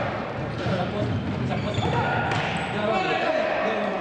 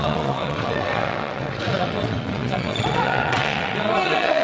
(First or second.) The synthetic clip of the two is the second